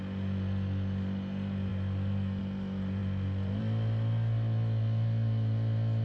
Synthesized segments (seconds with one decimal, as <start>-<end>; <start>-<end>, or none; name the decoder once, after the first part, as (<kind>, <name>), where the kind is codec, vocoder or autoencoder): none